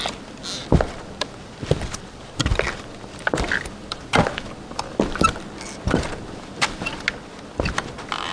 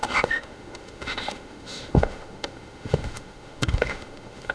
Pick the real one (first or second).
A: first